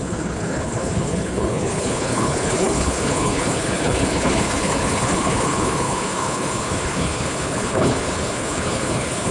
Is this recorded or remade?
remade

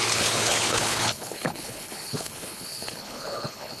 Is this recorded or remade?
remade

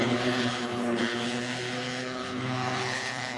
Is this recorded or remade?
remade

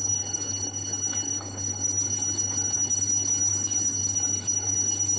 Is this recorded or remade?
remade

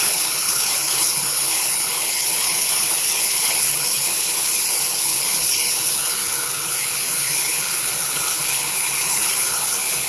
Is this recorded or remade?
remade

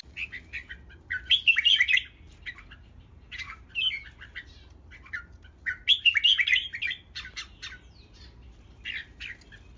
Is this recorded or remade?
recorded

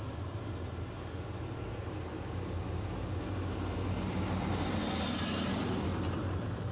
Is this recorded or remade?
recorded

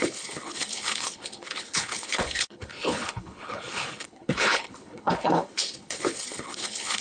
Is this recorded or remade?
remade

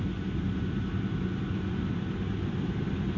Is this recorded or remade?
recorded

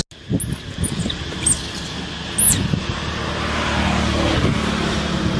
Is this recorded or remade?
recorded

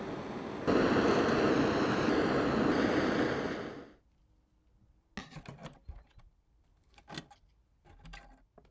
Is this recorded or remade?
recorded